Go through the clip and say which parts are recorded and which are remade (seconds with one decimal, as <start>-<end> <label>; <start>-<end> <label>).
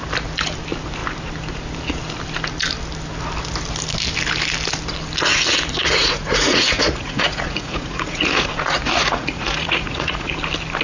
0.0-6.0 recorded; 6.0-10.3 remade; 10.3-10.8 recorded